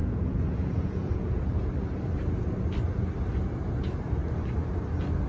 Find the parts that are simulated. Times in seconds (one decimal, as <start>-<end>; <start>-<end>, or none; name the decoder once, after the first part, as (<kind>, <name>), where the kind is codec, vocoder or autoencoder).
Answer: 0.0-1.7 (vocoder, Vocos)